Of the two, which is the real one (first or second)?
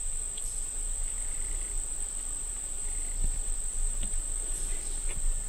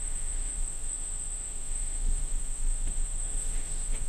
first